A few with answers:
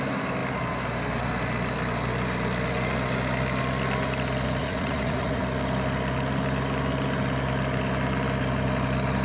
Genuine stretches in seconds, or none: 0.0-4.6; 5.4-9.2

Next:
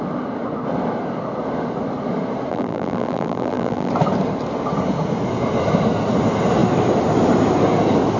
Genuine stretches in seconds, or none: 0.0-2.5; 3.9-8.2

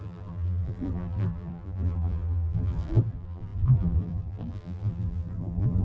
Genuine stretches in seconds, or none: none

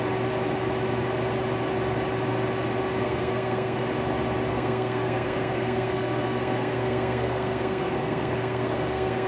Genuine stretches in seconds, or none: 0.0-3.0; 3.8-4.5

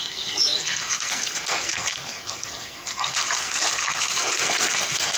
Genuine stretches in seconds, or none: none

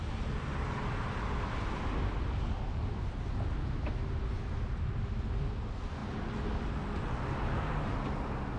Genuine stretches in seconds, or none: 0.0-8.6

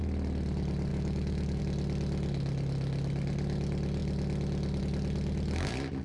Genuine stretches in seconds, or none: 0.0-0.9; 1.6-6.0